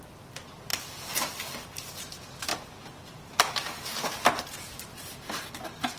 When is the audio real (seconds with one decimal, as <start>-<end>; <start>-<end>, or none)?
0.0-0.7; 2.1-6.0